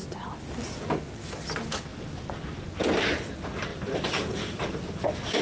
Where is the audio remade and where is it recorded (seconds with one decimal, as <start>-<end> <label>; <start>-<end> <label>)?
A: 0.0-3.7 recorded; 3.7-4.9 remade; 4.9-5.4 recorded